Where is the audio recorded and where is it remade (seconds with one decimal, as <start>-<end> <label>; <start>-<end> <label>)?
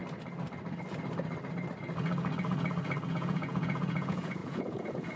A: 0.0-3.1 recorded; 3.1-5.2 remade